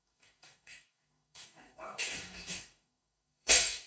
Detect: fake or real fake